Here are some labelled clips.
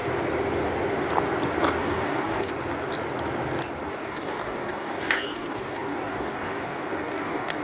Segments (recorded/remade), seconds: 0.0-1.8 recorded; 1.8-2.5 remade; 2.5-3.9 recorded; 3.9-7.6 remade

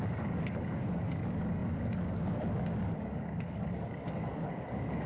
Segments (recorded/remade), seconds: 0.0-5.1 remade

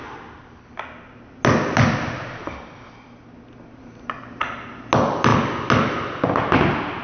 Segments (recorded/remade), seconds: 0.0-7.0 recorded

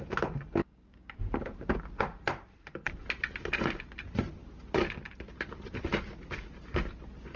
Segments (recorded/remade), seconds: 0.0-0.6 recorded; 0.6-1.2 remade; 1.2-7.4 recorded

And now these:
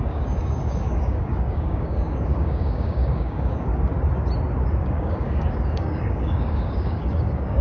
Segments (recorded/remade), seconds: 0.0-3.7 remade; 3.7-4.8 recorded; 4.8-7.6 remade

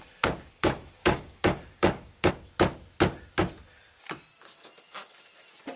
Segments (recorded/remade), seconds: 0.0-1.0 recorded; 1.0-2.3 remade; 2.3-5.8 recorded

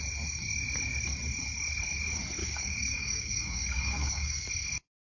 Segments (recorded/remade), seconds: 0.0-2.4 recorded; 2.4-4.5 remade; 4.5-5.0 recorded

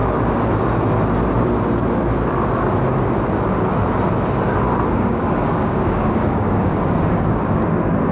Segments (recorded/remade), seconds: 0.0-4.9 recorded; 4.9-8.1 remade